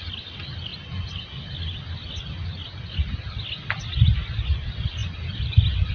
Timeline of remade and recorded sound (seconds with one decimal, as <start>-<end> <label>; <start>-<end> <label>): 0.0-5.9 recorded